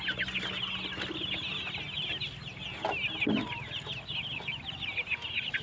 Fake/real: real